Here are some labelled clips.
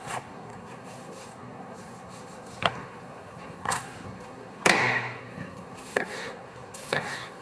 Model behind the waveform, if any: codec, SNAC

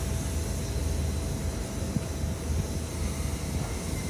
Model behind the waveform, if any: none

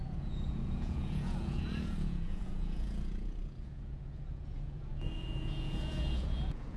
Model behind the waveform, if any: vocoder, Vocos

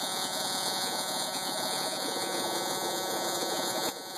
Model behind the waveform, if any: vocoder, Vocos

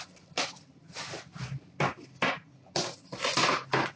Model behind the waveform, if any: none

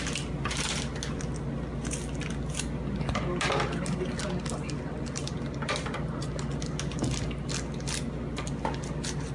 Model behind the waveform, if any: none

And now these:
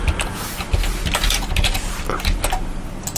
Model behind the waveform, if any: none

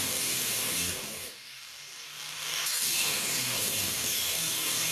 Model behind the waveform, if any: codec, DAC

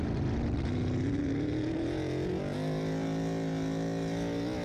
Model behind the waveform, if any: none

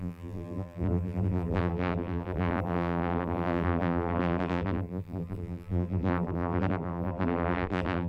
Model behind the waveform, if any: vocoder, BigVGAN v2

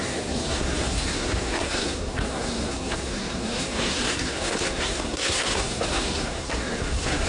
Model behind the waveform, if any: codec, SNAC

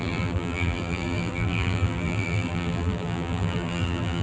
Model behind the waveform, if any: vocoder, BigVGAN v2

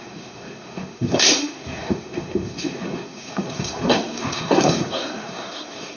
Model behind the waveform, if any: codec, SNAC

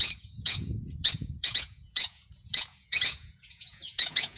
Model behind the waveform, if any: vocoder, Vocos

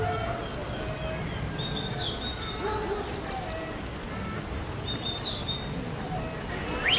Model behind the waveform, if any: none